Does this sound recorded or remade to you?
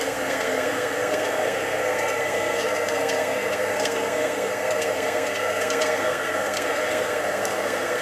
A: remade